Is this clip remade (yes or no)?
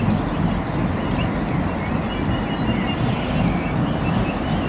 no